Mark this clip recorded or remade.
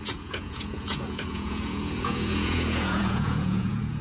remade